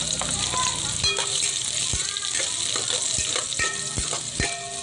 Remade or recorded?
recorded